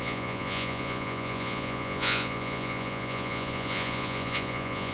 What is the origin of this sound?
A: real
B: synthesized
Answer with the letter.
B